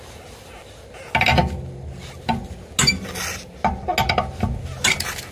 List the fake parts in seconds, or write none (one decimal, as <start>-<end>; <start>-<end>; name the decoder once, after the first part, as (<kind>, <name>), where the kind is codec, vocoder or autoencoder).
none